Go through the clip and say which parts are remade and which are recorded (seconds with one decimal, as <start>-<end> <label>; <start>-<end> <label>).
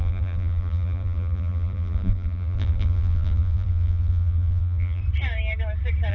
0.0-5.0 remade; 5.0-6.1 recorded